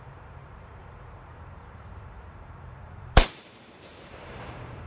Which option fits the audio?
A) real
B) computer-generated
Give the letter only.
B